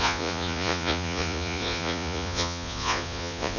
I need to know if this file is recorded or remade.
remade